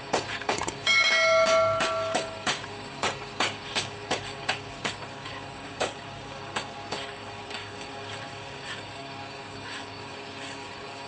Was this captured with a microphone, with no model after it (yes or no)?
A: no